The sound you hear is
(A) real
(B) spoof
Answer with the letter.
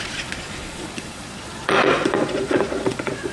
B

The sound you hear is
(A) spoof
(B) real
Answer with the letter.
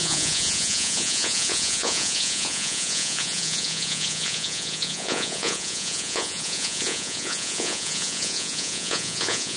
A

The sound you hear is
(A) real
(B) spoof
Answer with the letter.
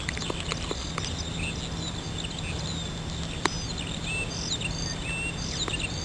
A